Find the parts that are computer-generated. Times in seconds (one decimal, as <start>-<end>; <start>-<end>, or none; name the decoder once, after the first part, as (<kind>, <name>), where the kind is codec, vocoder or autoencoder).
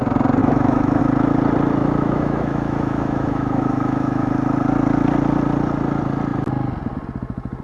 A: 0.4-1.0 (autoencoder, DAC-VAE); 1.8-4.3